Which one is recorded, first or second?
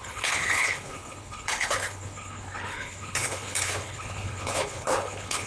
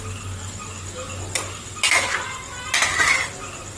second